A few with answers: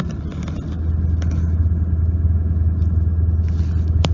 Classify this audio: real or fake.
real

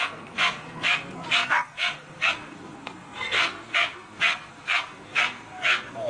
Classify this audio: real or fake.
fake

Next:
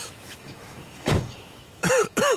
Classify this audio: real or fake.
fake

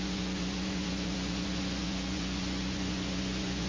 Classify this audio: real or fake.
fake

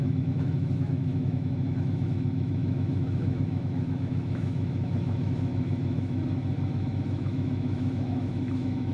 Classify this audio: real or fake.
fake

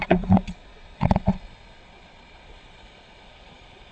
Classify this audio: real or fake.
fake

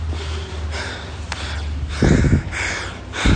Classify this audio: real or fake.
real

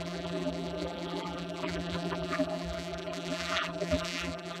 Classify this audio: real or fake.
fake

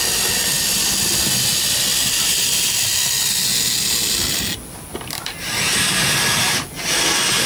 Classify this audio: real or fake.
real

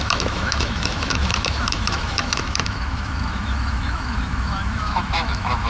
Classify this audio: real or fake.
fake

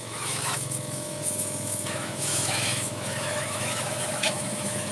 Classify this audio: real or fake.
fake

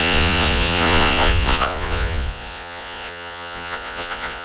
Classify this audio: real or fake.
fake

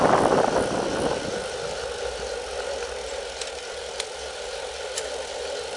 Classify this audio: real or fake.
real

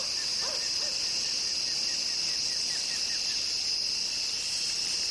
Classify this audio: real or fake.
real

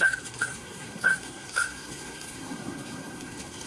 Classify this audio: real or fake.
fake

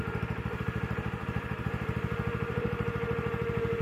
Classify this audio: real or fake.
fake